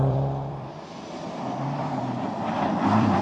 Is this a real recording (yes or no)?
no